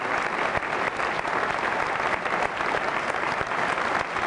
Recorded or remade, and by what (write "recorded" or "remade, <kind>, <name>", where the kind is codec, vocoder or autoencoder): recorded